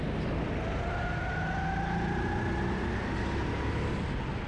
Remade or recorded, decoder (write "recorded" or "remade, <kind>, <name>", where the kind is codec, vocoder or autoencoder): recorded